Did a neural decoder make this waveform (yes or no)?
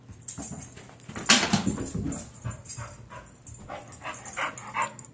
no